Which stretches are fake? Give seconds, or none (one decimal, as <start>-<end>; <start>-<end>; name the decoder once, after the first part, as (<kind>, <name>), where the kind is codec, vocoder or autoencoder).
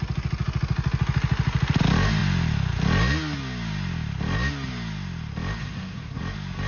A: 5.6-6.2 (codec, SNAC)